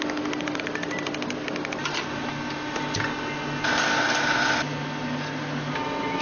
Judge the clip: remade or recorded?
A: recorded